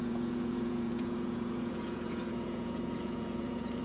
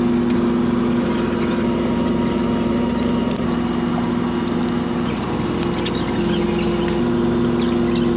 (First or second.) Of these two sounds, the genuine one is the second